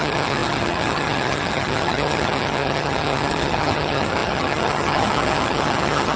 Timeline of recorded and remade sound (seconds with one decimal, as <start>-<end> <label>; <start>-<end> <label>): 0.0-6.2 remade

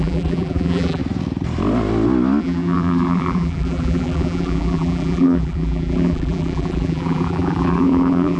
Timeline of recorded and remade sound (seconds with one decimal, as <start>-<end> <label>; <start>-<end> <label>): 0.0-1.0 remade; 1.0-2.4 recorded; 2.4-8.4 remade

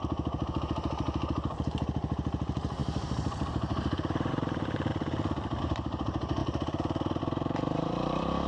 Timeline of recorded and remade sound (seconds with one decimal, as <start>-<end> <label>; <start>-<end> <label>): 0.0-4.9 remade; 4.9-5.6 recorded; 5.6-8.5 remade

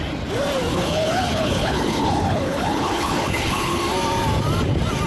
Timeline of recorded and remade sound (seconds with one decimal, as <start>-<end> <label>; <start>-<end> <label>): 0.0-0.7 recorded; 0.7-3.8 remade; 3.8-5.1 recorded

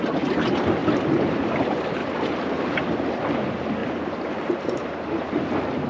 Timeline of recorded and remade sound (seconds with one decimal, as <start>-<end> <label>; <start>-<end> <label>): 0.0-2.0 recorded; 2.0-2.8 remade; 2.8-3.8 recorded; 3.8-5.9 remade